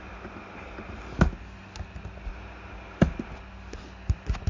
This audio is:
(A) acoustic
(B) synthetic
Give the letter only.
A